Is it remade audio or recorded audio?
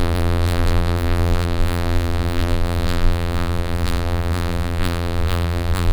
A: remade